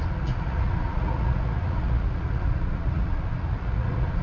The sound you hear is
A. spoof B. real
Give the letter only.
A